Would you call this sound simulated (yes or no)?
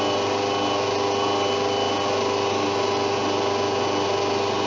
no